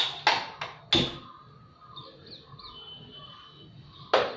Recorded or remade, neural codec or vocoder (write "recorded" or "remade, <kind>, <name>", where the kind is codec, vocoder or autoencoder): recorded